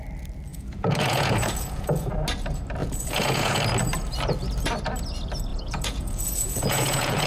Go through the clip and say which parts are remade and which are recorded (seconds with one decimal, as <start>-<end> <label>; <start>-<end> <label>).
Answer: 0.0-0.5 recorded; 0.5-2.1 remade; 2.1-2.8 recorded; 2.8-3.6 remade; 3.6-5.5 recorded; 5.5-7.3 remade